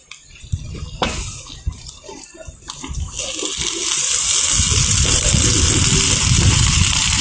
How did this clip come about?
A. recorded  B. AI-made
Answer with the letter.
A